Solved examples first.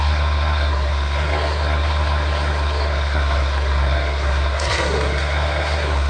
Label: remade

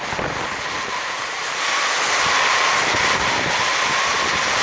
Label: recorded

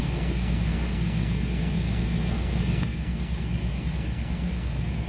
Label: remade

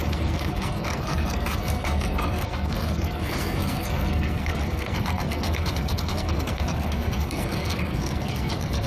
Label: remade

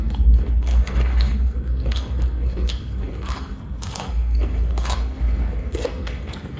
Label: remade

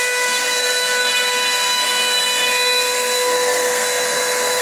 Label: remade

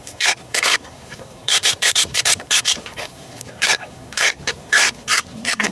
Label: remade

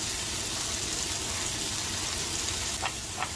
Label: recorded